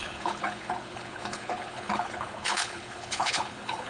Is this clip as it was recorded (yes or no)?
no